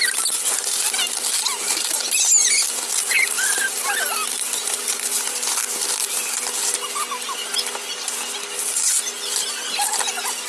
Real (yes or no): yes